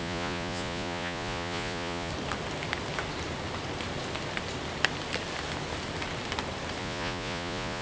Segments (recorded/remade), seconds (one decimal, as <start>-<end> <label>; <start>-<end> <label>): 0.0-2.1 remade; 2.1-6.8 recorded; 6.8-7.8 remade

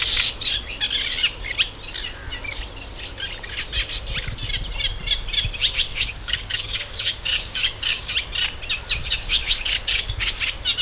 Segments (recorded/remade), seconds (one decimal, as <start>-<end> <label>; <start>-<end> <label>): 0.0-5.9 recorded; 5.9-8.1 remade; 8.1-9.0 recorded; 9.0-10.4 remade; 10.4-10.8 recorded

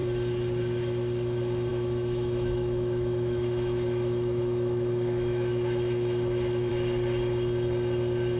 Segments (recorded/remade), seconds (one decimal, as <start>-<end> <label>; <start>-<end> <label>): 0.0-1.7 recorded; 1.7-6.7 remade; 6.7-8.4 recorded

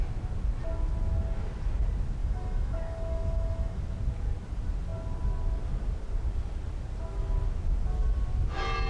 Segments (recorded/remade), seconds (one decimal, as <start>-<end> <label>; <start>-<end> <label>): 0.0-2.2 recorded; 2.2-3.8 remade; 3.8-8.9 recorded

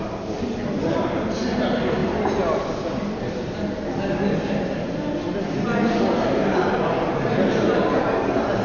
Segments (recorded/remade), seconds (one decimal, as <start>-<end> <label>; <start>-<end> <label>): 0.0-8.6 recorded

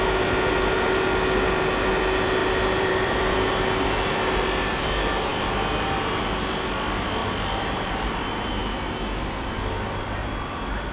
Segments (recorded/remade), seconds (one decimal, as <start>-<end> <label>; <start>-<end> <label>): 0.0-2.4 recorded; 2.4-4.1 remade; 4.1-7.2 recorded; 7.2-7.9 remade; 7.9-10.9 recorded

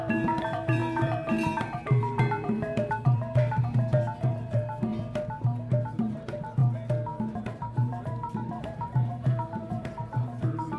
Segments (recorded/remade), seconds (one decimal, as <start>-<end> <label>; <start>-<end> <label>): 0.0-4.9 remade; 4.9-5.7 recorded; 5.7-6.6 remade; 6.6-7.4 recorded; 7.4-10.8 remade